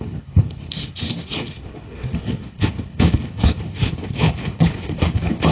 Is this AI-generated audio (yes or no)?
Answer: yes